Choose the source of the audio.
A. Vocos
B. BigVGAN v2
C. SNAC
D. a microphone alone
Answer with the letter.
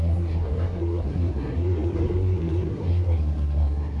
C